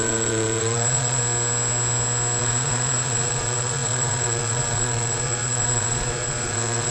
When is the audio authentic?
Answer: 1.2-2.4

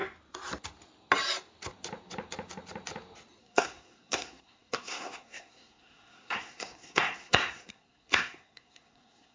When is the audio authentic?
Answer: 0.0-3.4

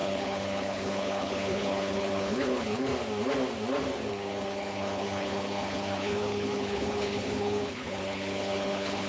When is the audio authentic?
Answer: 2.9-4.1

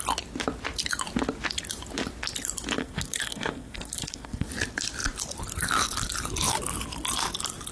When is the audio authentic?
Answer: 0.0-2.8; 4.5-7.7

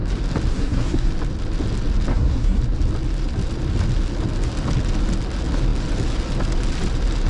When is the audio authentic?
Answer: 0.0-0.5; 1.1-2.1; 2.6-7.3

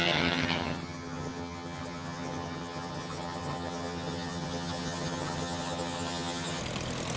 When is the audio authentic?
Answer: 6.6-7.2